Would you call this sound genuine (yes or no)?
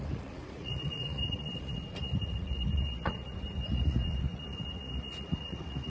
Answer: no